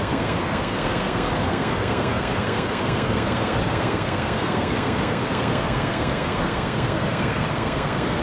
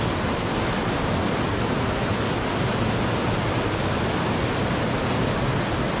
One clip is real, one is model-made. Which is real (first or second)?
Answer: second